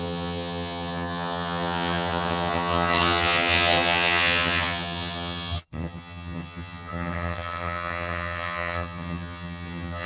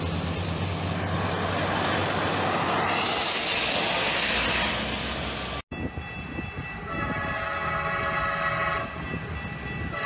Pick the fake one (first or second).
first